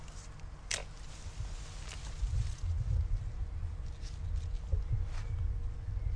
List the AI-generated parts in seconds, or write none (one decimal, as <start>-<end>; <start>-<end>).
none